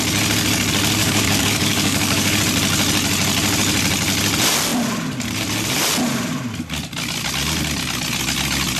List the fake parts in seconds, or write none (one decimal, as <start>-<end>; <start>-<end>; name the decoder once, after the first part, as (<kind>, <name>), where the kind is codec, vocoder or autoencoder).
1.0-2.4 (codec, DAC)